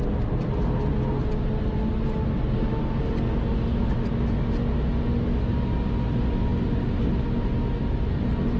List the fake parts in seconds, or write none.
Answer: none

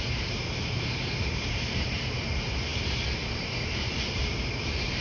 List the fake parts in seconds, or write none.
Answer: 0.0-5.0 (vocoder, BigVGAN v2)

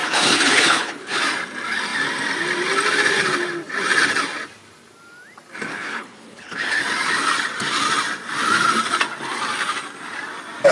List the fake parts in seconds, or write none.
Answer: 0.0-1.2 (codec, HILCodec); 5.7-6.8

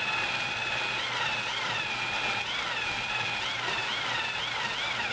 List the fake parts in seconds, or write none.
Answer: none

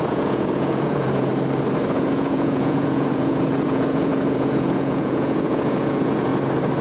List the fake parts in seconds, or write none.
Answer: 0.0-1.3 (vocoder, Vocos); 1.9-6.3

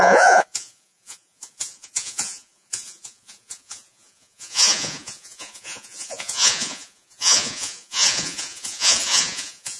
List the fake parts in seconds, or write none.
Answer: 0.0-9.8 (vocoder, Vocos)